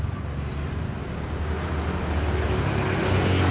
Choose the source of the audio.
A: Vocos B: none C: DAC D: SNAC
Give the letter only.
B